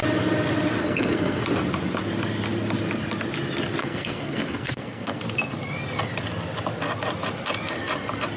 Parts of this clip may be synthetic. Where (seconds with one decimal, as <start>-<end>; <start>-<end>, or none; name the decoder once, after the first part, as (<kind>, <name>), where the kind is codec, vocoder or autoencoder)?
0.8-1.4 (codec, SNAC); 3.8-5.2